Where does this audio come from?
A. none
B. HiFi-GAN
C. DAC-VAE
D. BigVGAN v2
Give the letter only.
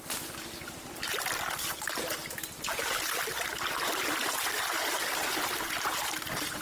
A